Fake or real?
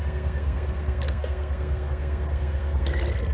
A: fake